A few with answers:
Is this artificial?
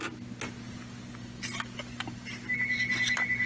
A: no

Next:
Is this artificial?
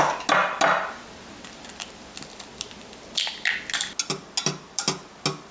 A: no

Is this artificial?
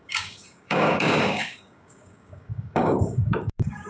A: yes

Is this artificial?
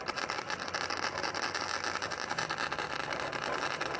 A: no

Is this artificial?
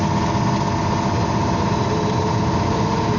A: no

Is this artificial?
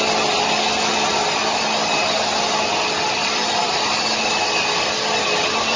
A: no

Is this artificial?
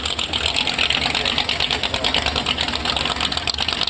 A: no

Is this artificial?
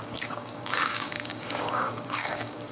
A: yes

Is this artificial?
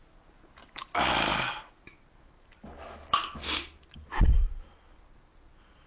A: no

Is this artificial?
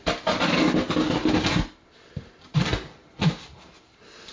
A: no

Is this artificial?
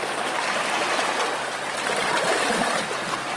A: no